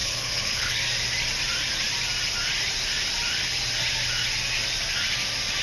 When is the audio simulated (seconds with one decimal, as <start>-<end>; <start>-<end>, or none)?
0.0-0.8